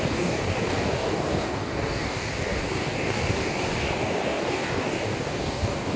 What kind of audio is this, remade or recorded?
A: remade